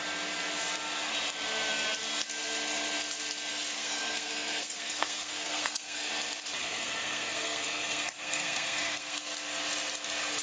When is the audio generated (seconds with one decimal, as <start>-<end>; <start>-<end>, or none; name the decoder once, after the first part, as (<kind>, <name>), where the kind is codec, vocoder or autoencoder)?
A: 3.5-6.1 (codec, SNAC); 6.6-9.3